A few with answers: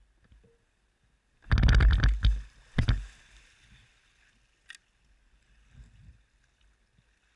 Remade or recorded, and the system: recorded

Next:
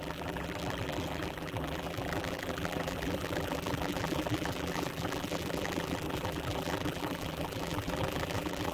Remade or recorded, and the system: remade, vocoder, BigVGAN v2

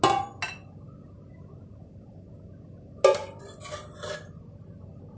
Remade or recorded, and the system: recorded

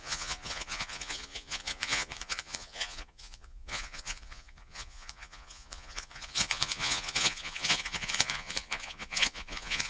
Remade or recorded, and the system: remade, vocoder, Vocos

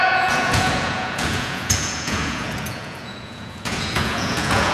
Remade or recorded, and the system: remade, vocoder, Vocos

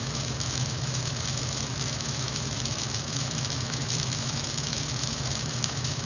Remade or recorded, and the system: remade, autoencoder, DAC-VAE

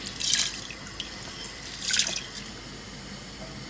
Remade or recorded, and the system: recorded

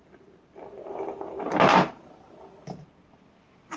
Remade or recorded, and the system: recorded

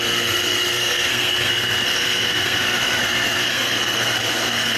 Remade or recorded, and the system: remade, codec, SNAC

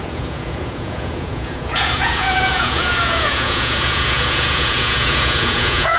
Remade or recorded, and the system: remade, vocoder, Vocos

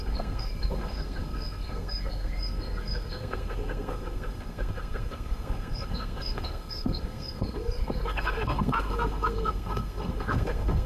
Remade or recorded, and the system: remade, codec, SNAC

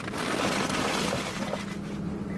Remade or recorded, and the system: recorded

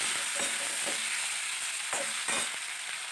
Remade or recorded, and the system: recorded